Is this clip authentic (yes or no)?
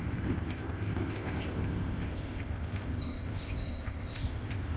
no